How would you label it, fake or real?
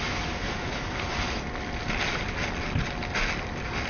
real